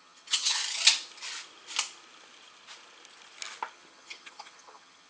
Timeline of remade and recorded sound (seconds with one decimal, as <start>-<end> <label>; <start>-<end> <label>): 0.0-0.6 remade; 0.6-3.7 recorded; 3.7-5.1 remade